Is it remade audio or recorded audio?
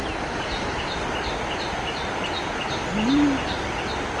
recorded